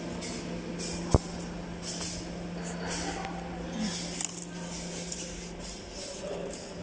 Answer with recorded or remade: recorded